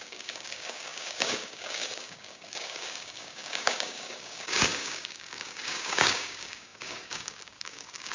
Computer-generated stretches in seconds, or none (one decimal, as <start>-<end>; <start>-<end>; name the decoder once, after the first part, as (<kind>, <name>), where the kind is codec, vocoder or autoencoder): 0.0-8.1 (codec, DAC)